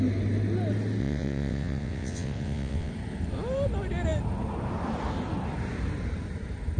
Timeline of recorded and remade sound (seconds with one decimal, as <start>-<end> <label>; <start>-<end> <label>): 0.0-1.0 recorded; 1.0-2.9 remade; 2.9-6.8 recorded